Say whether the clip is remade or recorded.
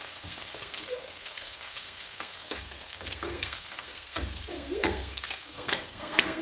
remade